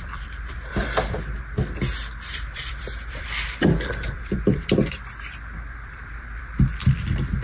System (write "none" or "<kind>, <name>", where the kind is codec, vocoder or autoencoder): vocoder, BigVGAN v2